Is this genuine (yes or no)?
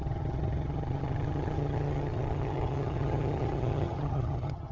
no